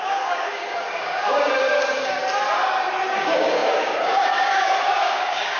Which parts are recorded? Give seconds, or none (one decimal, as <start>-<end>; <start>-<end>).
2.2-3.1